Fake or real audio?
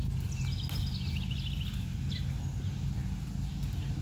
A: real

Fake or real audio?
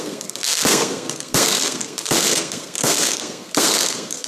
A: fake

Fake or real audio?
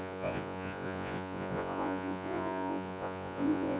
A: fake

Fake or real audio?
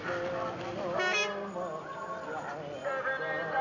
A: real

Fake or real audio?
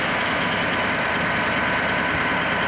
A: real